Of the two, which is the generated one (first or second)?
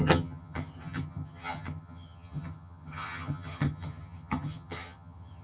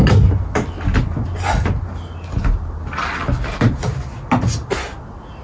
first